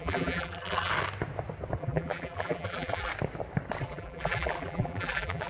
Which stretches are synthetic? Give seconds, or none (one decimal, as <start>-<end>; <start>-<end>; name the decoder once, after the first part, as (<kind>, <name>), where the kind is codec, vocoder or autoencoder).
0.0-0.9 (vocoder, BigVGAN v2); 1.8-3.1; 3.8-5.5